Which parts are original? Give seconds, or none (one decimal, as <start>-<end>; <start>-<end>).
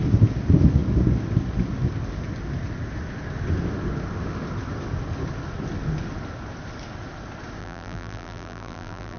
0.0-7.6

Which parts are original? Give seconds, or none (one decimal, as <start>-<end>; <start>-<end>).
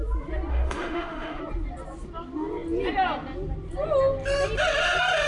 0.0-0.5; 1.4-5.3